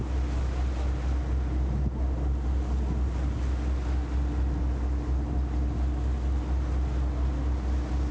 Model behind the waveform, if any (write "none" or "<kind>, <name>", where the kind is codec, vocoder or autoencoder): none